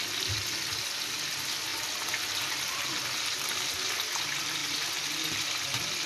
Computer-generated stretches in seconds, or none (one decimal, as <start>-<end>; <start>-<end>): none